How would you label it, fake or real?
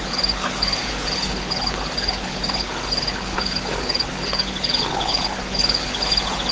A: fake